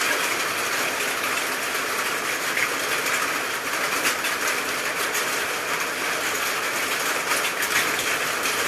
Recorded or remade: recorded